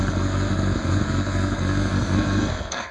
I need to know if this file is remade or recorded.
remade